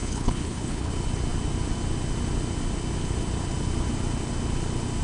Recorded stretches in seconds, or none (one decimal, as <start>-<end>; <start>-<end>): 0.9-5.0